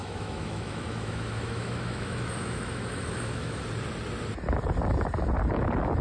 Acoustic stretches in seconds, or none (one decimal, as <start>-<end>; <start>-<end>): 3.6-6.0

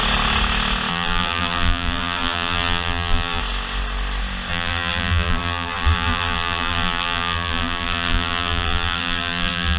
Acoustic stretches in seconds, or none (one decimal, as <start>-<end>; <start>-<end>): 0.0-0.9; 3.4-4.5